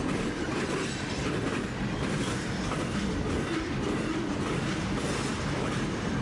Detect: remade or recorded recorded